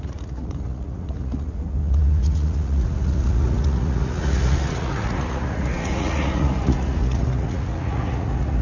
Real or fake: fake